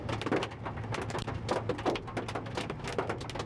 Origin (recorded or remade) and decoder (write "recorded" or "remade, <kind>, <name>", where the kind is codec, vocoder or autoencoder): recorded